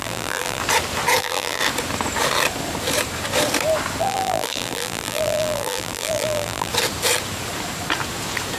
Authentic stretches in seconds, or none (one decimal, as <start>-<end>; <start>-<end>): 0.6-1.2; 1.6-4.0; 6.7-8.6